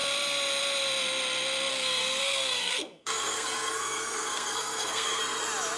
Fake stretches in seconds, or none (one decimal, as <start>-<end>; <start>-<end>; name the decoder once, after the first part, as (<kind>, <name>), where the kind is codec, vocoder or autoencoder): 1.7-5.2 (codec, SNAC)